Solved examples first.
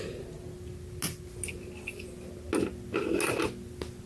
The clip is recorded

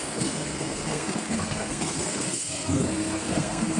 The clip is remade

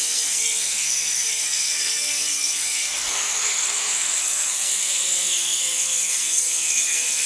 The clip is remade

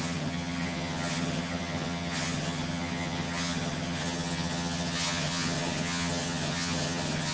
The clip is remade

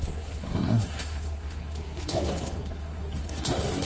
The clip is remade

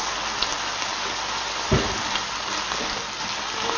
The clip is recorded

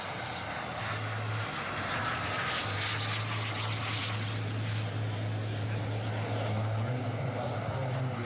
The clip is recorded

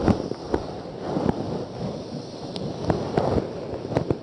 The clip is recorded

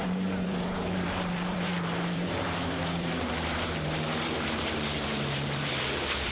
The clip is remade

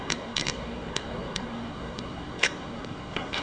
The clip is remade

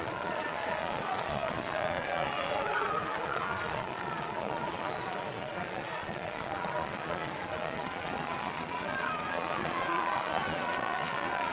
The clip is remade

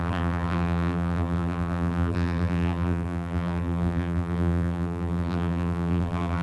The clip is remade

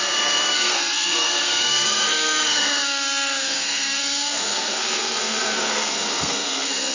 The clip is remade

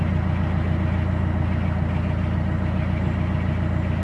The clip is recorded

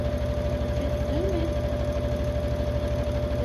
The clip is recorded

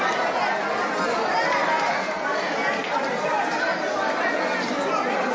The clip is recorded